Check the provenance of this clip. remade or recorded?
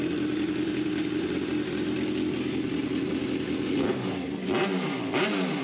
recorded